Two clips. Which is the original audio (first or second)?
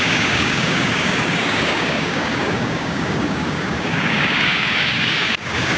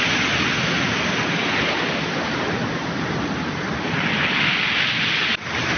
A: second